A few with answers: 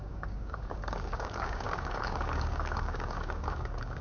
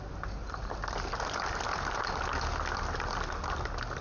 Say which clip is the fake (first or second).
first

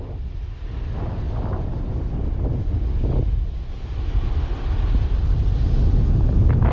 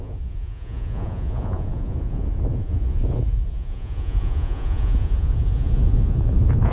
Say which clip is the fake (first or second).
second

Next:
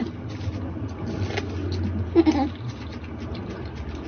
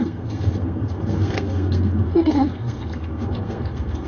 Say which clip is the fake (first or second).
second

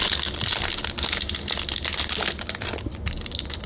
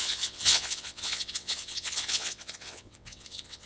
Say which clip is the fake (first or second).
second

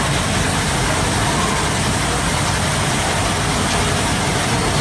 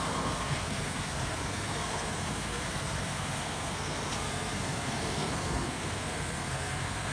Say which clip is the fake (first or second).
second